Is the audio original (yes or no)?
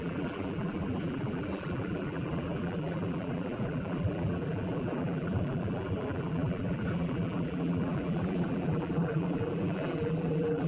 no